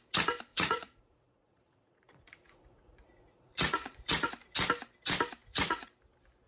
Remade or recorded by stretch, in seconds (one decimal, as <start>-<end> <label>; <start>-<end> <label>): 0.0-0.5 recorded; 0.5-4.3 remade; 4.3-5.4 recorded; 5.4-5.9 remade; 5.9-6.5 recorded